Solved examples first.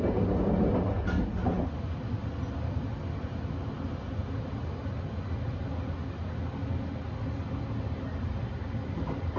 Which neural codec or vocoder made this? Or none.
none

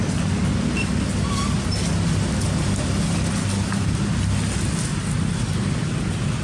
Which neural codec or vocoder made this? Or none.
none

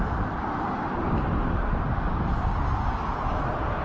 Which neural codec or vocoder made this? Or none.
none